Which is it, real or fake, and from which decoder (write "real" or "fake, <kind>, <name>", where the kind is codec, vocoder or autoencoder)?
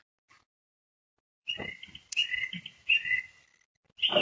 real